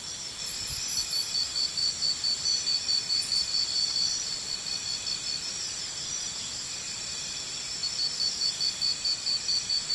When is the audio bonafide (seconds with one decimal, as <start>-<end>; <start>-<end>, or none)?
0.0-1.8; 6.7-8.9

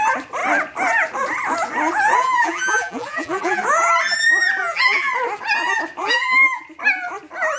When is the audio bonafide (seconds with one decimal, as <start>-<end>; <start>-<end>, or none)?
0.0-2.2; 3.6-4.6; 5.1-6.0; 6.6-7.6

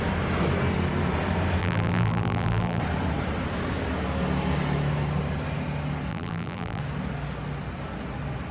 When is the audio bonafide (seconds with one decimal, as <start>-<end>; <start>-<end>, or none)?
0.0-1.6; 2.8-6.1; 6.8-8.5